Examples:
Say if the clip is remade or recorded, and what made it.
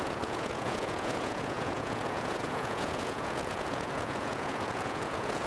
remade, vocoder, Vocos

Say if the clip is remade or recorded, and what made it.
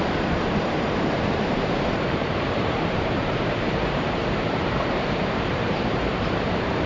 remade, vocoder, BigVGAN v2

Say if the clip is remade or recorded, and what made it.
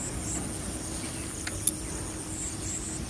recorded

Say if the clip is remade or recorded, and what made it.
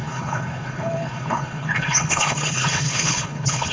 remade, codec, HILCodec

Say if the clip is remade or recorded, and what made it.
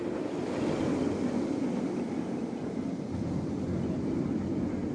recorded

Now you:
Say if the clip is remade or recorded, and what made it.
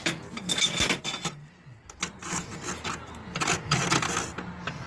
recorded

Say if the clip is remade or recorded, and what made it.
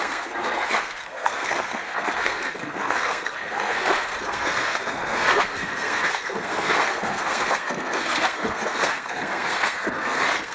remade, codec, SNAC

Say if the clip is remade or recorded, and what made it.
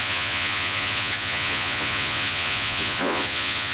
remade, vocoder, Vocos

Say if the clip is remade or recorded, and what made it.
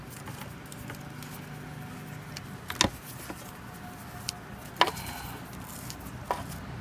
recorded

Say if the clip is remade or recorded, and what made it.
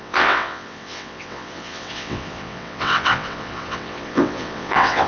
remade, vocoder, WaveNeXt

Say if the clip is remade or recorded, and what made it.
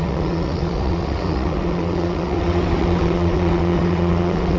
remade, vocoder, WaveNeXt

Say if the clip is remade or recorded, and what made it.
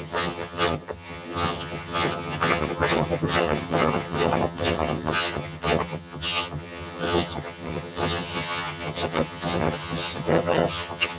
remade, vocoder, HiFi-GAN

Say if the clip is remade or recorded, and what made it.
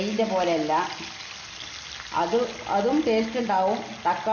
recorded